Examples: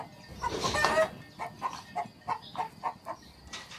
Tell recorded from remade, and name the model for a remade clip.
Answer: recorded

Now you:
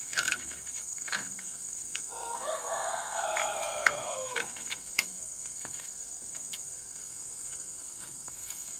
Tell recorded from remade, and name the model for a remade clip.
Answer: remade, codec, SNAC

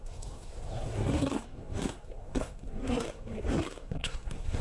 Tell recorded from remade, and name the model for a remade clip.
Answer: remade, codec, SNAC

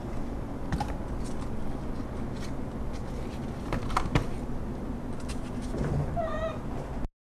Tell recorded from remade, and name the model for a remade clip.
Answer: recorded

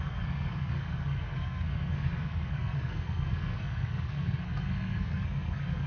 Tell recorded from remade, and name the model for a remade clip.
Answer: remade, codec, SNAC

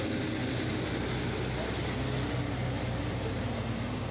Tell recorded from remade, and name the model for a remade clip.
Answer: recorded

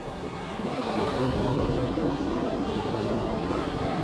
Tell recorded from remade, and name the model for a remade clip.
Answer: remade, codec, SNAC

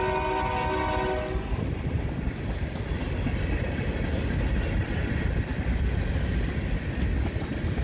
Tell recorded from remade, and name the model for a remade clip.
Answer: recorded